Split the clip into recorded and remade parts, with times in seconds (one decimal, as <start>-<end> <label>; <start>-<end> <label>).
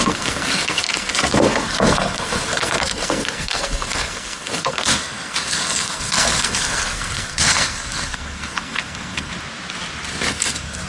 0.0-9.3 remade; 9.3-10.3 recorded; 10.3-10.9 remade